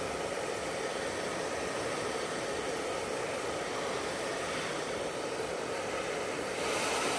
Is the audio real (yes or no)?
yes